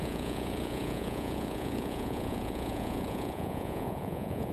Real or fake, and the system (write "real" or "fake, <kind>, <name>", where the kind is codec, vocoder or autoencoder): fake, vocoder, Vocos